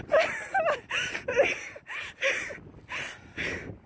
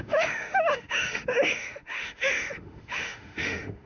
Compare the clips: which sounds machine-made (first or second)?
second